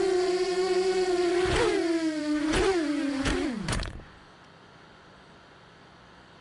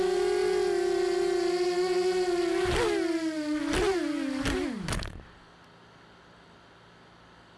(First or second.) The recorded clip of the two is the second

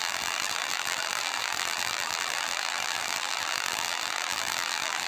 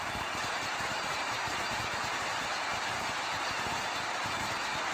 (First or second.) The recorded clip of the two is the second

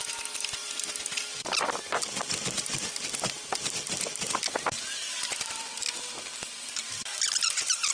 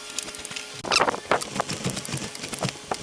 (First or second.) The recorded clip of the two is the second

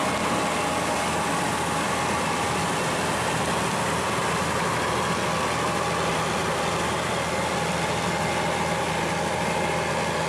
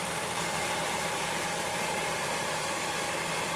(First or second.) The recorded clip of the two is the first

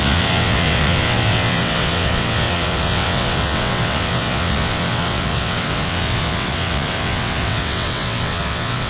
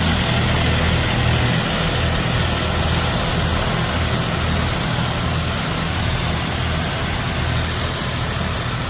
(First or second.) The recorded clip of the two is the second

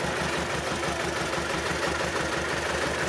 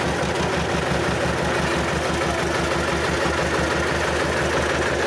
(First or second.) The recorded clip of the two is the second